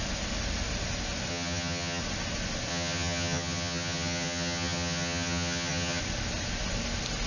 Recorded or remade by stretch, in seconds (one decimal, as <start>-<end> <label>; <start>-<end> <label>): 0.0-1.3 recorded; 1.3-2.0 remade; 2.0-2.7 recorded; 2.7-6.0 remade; 6.0-7.3 recorded